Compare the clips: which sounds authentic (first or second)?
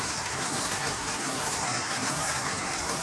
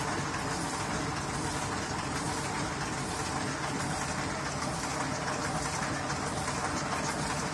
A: second